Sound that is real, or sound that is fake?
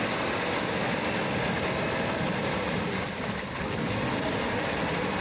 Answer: real